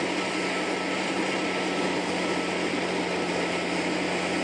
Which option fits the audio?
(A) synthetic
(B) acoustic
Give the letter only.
B